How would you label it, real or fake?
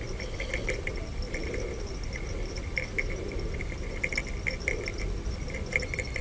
real